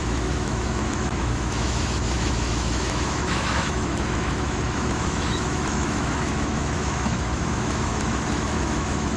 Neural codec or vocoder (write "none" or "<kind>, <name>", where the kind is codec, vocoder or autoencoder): autoencoder, DAC-VAE